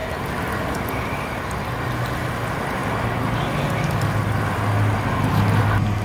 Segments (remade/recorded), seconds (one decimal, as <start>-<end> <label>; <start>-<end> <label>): 0.0-6.0 recorded